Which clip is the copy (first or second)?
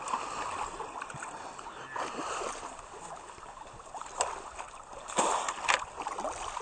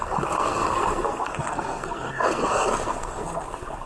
second